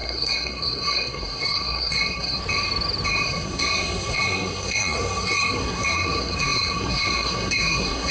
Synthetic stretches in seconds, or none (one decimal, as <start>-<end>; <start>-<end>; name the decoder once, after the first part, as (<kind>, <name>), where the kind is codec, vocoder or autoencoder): 0.0-2.4 (codec, SNAC); 3.1-8.1